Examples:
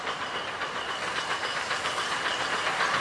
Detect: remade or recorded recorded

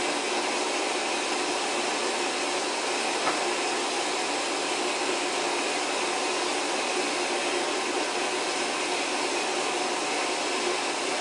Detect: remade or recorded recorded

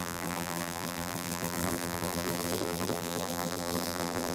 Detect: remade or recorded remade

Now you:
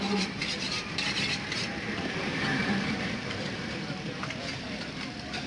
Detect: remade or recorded remade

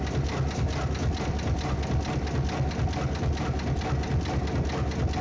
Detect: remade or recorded recorded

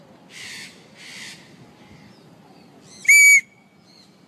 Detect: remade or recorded recorded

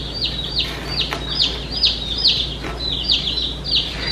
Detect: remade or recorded recorded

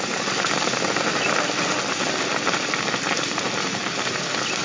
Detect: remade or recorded recorded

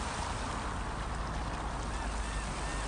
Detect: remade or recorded recorded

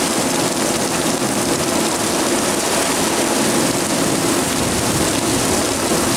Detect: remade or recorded recorded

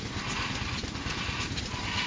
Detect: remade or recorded recorded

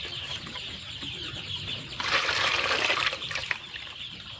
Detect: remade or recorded remade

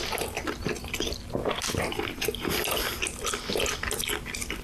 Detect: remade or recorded recorded